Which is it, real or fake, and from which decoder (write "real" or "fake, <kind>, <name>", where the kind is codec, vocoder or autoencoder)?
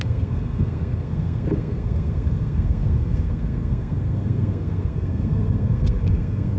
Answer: fake, codec, SNAC